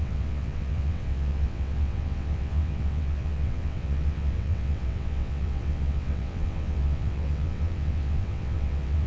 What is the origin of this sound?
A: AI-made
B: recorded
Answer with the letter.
A